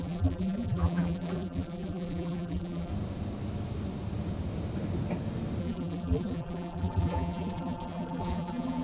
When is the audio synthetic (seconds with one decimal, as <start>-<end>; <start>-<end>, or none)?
0.0-2.9; 5.6-8.8

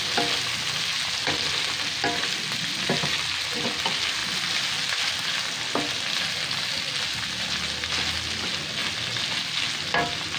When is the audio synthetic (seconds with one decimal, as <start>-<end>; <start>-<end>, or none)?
none